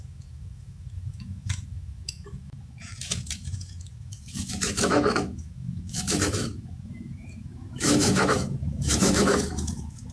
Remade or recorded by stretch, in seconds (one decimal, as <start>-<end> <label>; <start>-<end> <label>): 0.0-10.1 remade